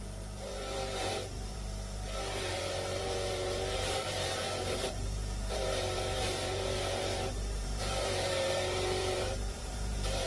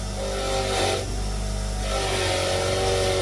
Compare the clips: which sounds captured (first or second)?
second